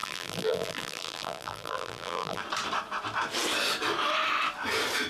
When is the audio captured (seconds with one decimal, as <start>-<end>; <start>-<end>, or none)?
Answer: 2.4-5.1